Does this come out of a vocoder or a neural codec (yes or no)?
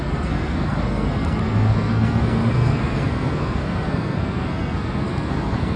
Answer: yes